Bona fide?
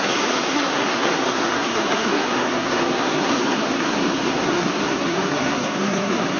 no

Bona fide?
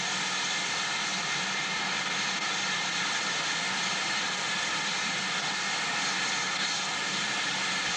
yes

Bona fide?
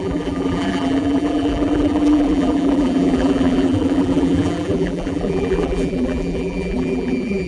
no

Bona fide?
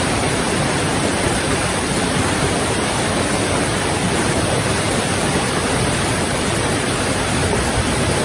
no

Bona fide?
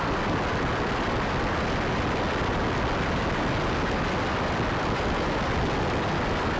yes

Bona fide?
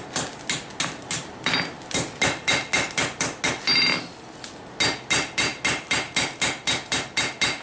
yes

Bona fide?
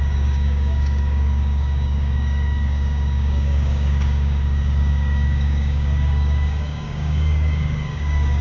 no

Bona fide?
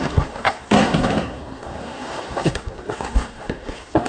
no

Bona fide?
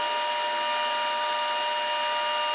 yes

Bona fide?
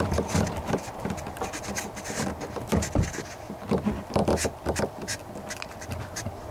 yes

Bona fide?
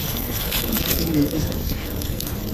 no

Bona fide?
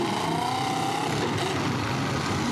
yes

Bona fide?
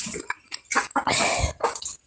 yes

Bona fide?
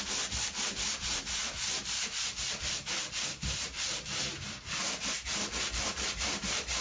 no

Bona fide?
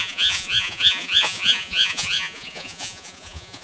no